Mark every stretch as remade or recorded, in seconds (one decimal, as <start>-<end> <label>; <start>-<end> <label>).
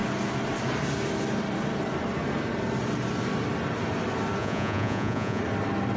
0.0-4.4 recorded; 4.4-5.4 remade; 5.4-6.0 recorded